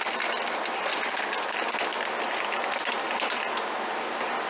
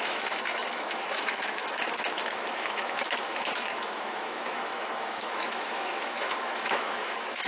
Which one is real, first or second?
first